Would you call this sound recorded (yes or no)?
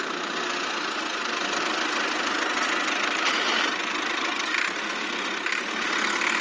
yes